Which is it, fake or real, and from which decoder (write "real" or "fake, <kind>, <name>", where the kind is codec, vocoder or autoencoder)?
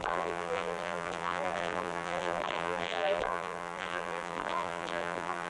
fake, vocoder, BigVGAN v2